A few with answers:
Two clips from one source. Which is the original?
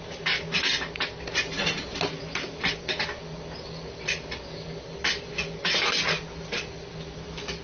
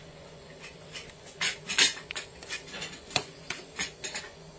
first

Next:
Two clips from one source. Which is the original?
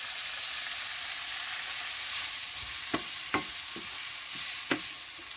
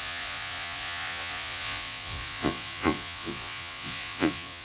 first